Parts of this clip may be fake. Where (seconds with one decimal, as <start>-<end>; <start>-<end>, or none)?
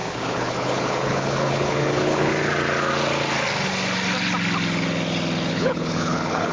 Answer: 0.0-2.3; 5.5-6.5